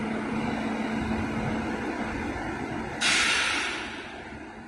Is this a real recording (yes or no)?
yes